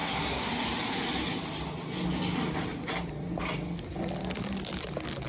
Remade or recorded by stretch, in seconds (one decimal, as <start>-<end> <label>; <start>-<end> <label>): 0.0-0.5 remade; 0.5-5.3 recorded